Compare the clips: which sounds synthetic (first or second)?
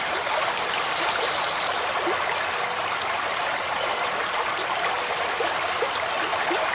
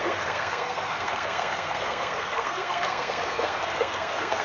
second